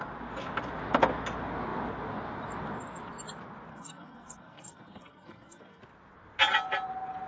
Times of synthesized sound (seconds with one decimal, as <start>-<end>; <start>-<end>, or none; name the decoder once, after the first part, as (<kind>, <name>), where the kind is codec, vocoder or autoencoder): 3.7-5.8 (codec, SNAC)